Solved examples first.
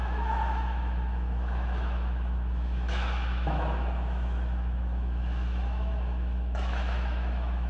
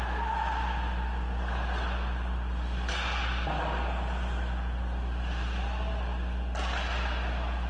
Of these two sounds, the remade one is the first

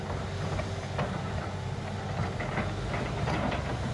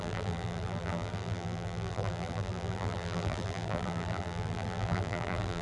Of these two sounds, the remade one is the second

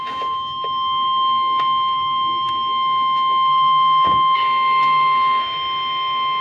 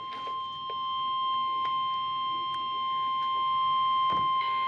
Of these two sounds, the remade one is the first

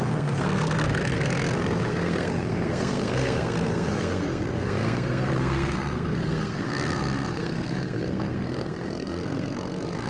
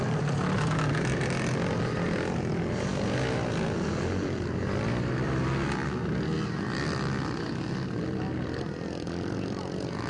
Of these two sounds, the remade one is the first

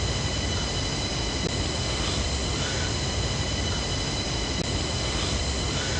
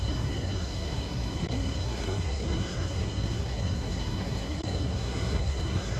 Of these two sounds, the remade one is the second